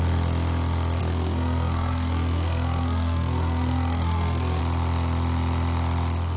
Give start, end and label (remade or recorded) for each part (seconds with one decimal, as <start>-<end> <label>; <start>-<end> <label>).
0.0-1.0 recorded; 1.0-4.6 remade; 4.6-6.4 recorded